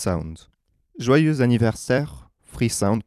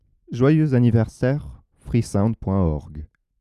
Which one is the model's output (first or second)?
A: first